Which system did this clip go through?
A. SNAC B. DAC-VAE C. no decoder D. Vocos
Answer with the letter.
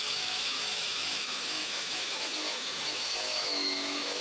B